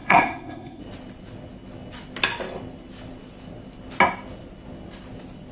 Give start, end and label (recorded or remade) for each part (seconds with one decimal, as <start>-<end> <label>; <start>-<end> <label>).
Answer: 0.0-0.8 remade; 0.8-5.5 recorded